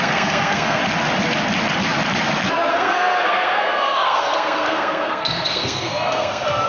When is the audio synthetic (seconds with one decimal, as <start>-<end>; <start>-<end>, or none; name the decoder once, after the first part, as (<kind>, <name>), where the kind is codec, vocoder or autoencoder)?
0.0-0.8 (codec, SNAC); 2.7-6.7